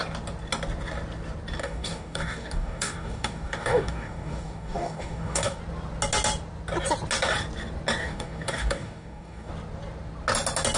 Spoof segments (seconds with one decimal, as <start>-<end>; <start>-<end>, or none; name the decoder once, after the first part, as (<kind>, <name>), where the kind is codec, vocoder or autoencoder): 1.6-5.6 (codec, DAC); 8.0-9.5